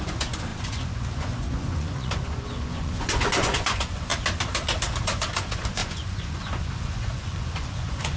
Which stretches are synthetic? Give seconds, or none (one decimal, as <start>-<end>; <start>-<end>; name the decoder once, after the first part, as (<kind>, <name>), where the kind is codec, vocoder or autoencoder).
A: 0.0-4.1 (vocoder, Vocos); 5.0-8.2